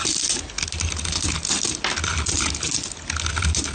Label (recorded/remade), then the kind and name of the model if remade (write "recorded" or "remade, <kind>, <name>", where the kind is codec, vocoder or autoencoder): recorded